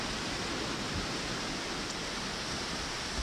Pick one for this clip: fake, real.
real